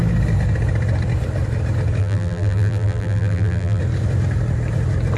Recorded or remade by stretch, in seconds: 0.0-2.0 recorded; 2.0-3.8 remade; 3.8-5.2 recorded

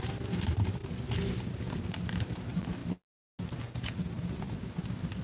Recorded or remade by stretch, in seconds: 0.0-0.8 remade; 0.8-1.8 recorded; 1.8-2.8 remade; 2.8-4.8 recorded; 4.8-5.2 remade

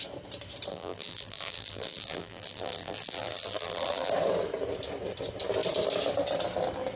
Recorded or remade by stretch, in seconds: 0.0-0.7 recorded; 0.7-4.1 remade; 4.1-7.0 recorded

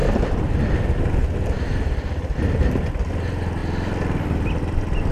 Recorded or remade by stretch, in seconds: 0.0-5.1 recorded

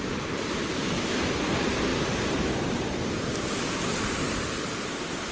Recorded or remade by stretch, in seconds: 0.0-5.3 remade